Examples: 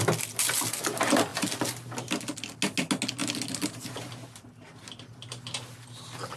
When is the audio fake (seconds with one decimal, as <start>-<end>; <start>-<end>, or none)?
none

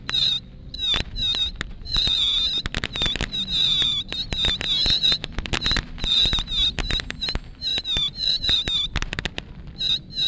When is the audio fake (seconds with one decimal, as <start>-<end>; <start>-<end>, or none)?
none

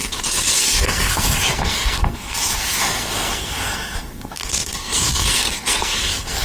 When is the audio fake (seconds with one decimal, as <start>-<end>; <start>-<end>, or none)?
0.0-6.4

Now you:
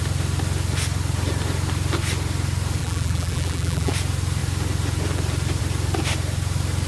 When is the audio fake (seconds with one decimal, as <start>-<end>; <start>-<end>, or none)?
2.8-3.9

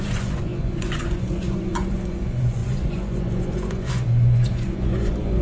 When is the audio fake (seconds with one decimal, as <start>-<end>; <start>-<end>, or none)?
0.0-5.4

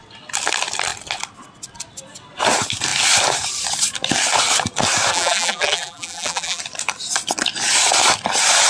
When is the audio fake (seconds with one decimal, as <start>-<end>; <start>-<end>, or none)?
5.1-6.6